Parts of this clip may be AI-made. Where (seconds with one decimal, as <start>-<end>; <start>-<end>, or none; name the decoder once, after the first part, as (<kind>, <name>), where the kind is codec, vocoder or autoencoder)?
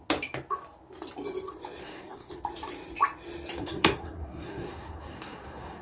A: 1.8-2.3 (codec, SNAC); 3.6-5.8